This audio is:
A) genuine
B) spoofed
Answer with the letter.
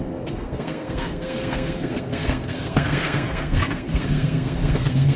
B